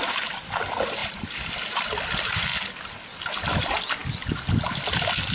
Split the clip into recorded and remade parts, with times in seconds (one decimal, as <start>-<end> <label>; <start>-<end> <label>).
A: 0.0-1.0 recorded; 1.0-1.9 remade; 1.9-5.3 recorded